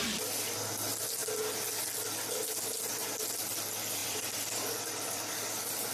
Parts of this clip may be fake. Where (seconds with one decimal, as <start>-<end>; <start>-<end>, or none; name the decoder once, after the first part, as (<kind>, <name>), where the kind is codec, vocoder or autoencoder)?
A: 4.0-5.5 (vocoder, BigVGAN v2)